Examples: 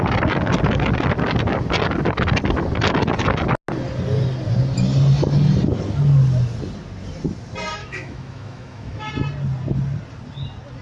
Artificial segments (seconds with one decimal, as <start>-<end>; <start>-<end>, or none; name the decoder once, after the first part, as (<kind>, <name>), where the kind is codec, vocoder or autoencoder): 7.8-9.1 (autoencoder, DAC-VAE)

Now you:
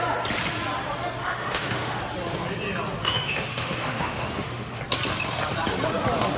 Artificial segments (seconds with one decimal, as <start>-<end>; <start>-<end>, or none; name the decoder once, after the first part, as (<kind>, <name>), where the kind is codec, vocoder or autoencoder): 1.2-2.0 (autoencoder, DAC-VAE); 3.0-4.8

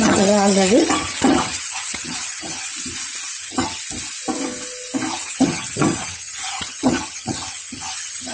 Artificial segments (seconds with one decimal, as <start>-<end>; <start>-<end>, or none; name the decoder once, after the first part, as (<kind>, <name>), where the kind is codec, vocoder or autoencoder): 0.0-2.7 (vocoder, HiFi-GAN); 3.4-3.8; 5.1-8.3

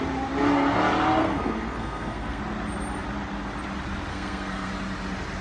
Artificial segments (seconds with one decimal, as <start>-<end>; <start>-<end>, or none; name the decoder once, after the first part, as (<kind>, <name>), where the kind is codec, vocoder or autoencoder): 1.2-2.4 (codec, SNAC); 4.1-4.7